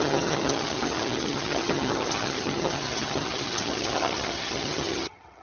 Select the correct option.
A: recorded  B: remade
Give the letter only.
B